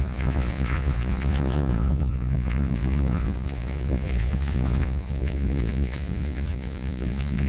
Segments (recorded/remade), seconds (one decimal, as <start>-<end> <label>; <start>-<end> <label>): 0.0-7.5 remade